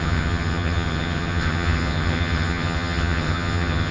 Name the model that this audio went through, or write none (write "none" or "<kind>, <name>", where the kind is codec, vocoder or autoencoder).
vocoder, HiFi-GAN